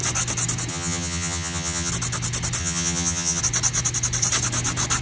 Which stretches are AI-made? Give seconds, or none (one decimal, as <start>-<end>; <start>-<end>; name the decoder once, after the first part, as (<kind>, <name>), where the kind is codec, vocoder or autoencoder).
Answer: 0.7-1.9 (vocoder, HiFi-GAN); 2.6-3.4